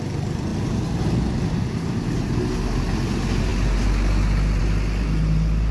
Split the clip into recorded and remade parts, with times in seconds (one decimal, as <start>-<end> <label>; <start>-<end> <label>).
0.0-5.7 recorded